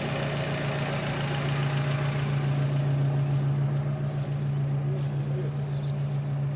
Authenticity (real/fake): real